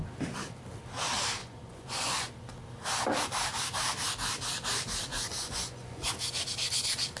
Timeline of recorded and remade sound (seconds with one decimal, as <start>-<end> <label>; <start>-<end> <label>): 0.0-1.4 recorded; 1.4-2.3 remade; 2.3-5.1 recorded; 5.1-6.1 remade; 6.1-7.2 recorded